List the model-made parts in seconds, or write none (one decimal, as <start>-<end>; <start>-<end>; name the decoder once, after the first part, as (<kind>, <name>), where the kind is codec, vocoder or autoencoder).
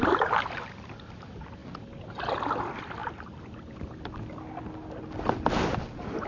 none